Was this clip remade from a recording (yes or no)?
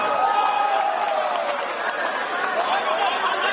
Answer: no